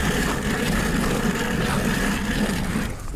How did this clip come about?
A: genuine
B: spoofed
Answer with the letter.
A